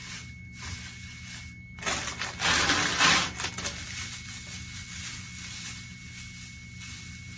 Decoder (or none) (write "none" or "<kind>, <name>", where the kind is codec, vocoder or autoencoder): none